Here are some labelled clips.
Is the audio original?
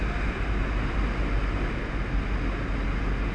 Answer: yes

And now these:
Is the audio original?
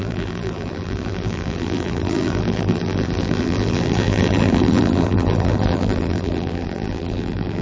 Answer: no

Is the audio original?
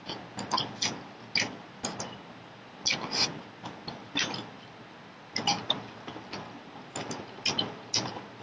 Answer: yes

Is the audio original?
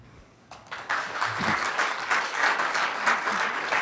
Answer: no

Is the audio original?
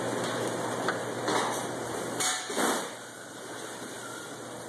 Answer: yes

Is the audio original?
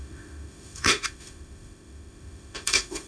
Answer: no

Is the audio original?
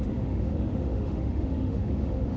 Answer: no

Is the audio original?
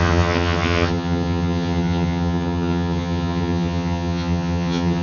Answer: no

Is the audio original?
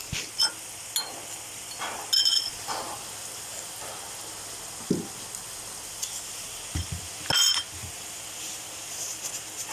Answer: yes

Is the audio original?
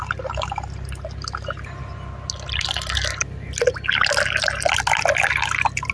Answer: yes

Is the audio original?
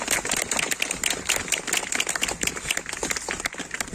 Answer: yes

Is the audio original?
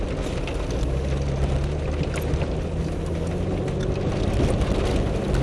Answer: yes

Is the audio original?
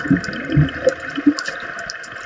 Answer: yes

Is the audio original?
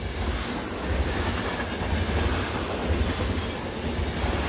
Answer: yes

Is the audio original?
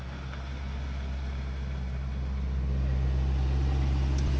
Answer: yes